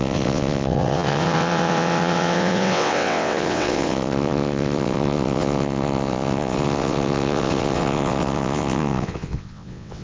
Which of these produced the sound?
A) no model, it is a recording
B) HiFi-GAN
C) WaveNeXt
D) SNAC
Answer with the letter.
C